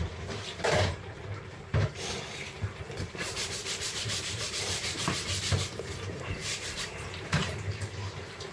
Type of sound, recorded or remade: remade